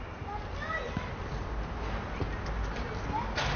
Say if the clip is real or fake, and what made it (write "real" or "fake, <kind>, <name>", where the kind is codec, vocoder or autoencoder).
real